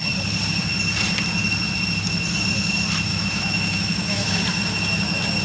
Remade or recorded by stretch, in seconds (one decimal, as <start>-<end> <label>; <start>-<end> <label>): 0.0-3.1 recorded; 3.1-4.4 remade; 4.4-5.4 recorded